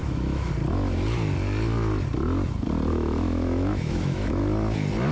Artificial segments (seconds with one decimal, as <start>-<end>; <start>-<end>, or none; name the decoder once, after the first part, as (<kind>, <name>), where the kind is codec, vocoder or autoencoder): 0.0-0.5 (autoencoder, DAC-VAE); 2.9-4.4